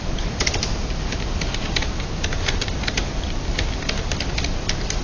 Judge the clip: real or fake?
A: real